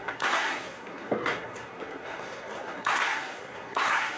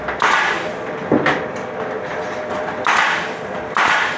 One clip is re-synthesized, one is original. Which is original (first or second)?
second